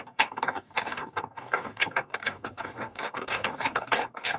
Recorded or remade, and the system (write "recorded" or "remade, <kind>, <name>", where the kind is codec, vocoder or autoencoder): remade, codec, DAC